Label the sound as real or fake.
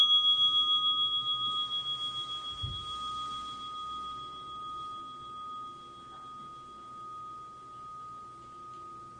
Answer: real